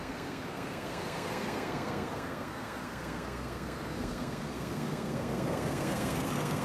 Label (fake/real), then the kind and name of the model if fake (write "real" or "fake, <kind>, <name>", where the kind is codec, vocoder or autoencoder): fake, codec, SNAC